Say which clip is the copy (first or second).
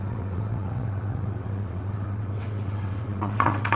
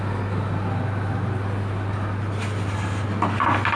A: first